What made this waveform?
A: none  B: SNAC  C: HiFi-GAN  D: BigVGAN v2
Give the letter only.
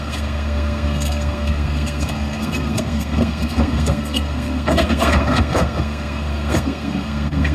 B